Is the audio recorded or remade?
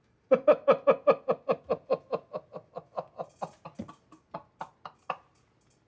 recorded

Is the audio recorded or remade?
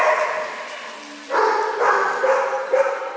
remade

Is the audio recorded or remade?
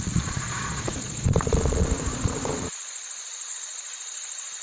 remade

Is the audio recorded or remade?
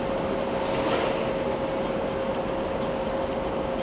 recorded